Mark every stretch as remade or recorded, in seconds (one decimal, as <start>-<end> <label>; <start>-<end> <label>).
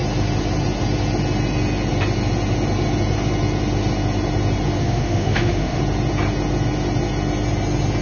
0.0-4.8 recorded; 4.8-5.8 remade; 5.8-8.0 recorded